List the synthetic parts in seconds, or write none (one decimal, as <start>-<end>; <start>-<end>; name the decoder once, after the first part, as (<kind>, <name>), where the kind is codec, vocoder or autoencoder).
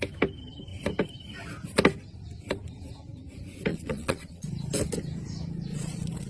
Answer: 3.7-4.5 (vocoder, Vocos); 5.7-6.3